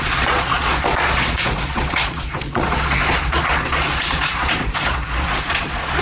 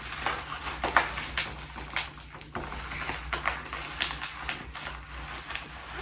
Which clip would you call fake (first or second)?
first